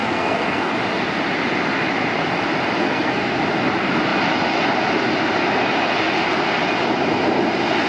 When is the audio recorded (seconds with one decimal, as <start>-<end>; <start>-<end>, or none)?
0.7-2.8; 3.4-7.9